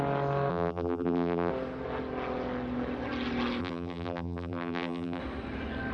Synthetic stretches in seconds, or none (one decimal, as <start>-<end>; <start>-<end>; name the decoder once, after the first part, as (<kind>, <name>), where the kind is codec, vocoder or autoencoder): 0.5-1.5 (vocoder, BigVGAN v2); 3.6-5.2